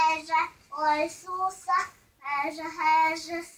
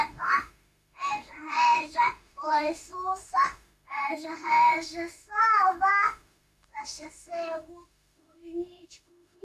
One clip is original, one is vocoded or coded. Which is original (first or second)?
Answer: first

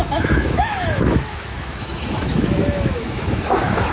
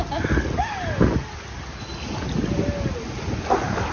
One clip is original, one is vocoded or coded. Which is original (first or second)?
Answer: second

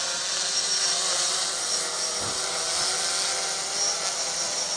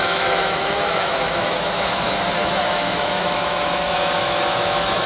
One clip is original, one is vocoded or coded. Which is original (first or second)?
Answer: first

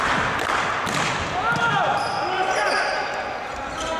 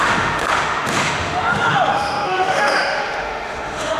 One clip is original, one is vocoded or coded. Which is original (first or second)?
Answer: first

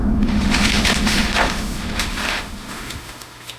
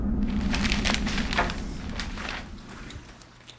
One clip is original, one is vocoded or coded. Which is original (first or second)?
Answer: second